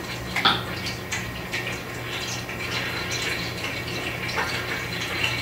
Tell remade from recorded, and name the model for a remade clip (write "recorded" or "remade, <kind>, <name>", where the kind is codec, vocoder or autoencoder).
recorded